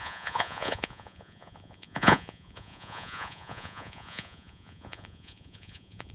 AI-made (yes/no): yes